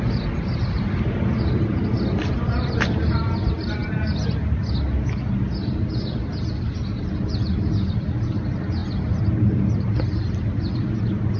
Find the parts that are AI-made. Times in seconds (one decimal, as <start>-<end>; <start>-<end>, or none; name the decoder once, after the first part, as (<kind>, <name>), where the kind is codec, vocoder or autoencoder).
none